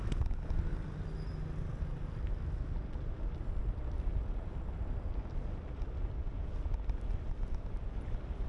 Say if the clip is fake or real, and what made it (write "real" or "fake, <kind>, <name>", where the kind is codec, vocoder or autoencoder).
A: real